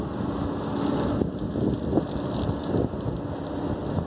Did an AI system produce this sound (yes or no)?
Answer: no